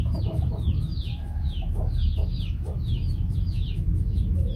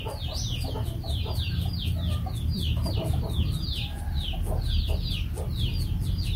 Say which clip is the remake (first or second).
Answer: first